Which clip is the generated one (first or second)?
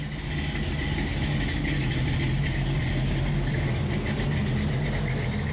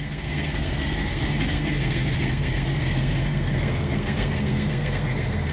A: second